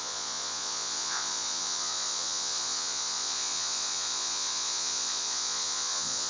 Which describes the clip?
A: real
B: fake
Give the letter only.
B